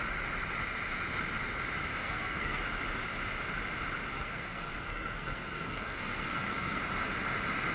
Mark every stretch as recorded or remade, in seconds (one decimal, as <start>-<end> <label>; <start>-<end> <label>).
0.0-1.9 recorded; 1.9-2.6 remade; 2.6-4.1 recorded; 4.1-6.8 remade; 6.8-7.7 recorded